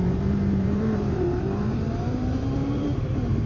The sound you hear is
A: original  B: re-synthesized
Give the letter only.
B